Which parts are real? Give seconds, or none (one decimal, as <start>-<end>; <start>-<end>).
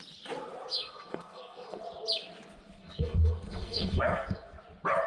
0.0-0.7; 1.8-2.8; 4.6-5.1